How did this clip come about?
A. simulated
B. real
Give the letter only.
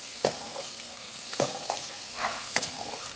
A